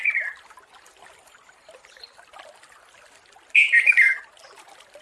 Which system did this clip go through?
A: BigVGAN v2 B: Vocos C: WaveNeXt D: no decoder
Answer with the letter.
D